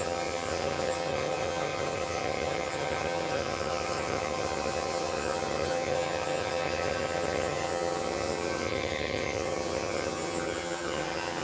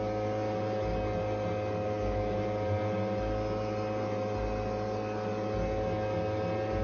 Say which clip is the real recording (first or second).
second